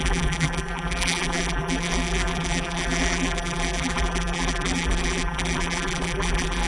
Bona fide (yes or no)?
no